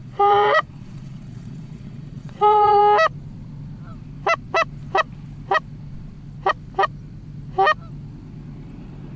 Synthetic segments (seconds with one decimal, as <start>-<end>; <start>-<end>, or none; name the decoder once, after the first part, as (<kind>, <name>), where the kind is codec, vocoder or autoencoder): 0.0-2.8 (vocoder, Vocos)

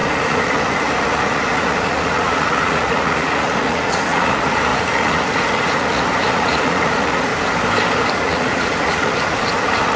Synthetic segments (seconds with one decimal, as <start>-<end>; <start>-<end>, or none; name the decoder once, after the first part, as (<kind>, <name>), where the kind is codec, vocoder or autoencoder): 0.0-7.3 (vocoder, Vocos); 8.1-10.0

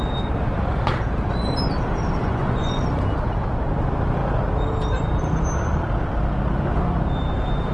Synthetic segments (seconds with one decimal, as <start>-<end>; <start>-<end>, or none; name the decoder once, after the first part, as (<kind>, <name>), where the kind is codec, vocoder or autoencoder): 2.2-2.8 (vocoder, Vocos)

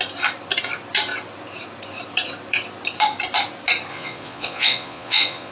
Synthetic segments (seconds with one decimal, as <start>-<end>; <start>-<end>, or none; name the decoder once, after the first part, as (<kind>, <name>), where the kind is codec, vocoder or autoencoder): 3.9-5.5 (vocoder, Vocos)

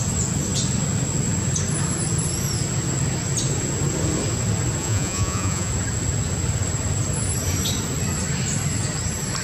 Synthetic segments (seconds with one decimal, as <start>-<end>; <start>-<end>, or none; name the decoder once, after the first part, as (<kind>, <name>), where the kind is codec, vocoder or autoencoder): 4.8-5.7 (vocoder, Vocos)

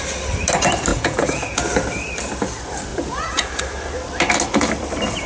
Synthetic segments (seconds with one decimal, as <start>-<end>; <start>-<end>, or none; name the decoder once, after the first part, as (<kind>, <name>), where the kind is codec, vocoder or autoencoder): 0.9-1.6 (vocoder, Vocos); 2.9-3.5

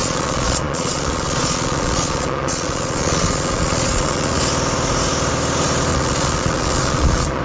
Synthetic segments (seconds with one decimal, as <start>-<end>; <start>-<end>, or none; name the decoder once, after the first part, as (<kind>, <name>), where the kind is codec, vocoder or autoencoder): 0.0-4.4 (vocoder, Vocos); 5.9-7.4

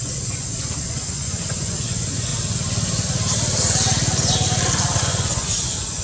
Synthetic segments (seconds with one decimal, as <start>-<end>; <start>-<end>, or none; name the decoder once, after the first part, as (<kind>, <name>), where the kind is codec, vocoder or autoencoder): 0.0-2.3 (vocoder, Vocos); 5.0-6.0